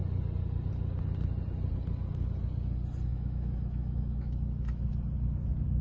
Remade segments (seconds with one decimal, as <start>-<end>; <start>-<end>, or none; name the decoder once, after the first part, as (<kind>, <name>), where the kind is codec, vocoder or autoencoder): 3.1-4.8 (autoencoder, DAC-VAE)